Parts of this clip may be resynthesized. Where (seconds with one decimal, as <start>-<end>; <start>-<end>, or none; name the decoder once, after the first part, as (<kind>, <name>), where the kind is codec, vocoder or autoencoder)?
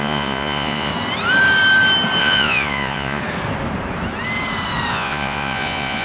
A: 0.0-0.9 (vocoder, Vocos); 2.2-3.2; 4.9-6.0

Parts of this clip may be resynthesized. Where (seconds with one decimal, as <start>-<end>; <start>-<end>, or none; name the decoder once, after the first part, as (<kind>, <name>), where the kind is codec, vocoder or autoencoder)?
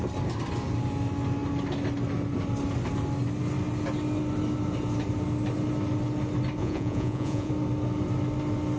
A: 6.6-7.5 (vocoder, Vocos)